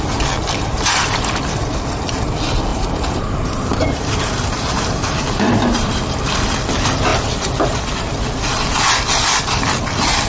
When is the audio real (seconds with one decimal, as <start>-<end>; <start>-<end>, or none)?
0.0-2.7; 6.2-10.3